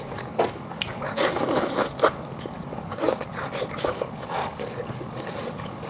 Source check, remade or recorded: remade